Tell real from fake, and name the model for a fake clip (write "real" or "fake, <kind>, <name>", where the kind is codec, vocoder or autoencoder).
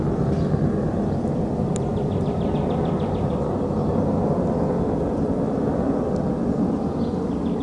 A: real